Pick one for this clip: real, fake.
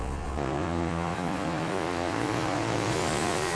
fake